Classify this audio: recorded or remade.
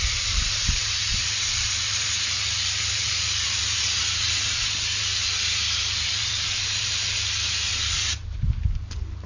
remade